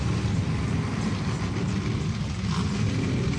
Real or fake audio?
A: real